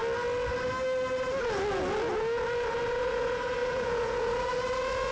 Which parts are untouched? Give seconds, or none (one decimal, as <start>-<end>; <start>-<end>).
0.0-3.0